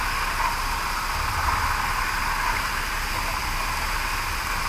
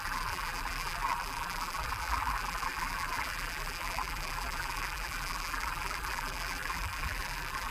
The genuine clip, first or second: first